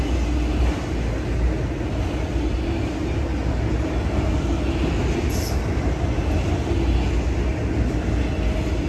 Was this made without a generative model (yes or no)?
yes